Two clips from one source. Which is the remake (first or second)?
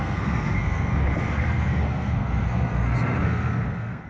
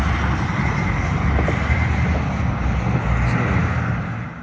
first